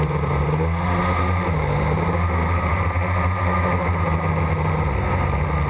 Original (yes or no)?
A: yes